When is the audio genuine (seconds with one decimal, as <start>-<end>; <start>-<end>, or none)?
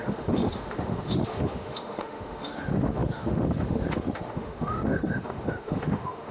none